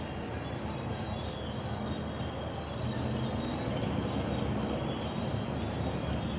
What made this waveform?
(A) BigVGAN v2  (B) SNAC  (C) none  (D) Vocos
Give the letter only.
C